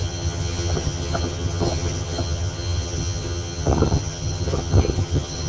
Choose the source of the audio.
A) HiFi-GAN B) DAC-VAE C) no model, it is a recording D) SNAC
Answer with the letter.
A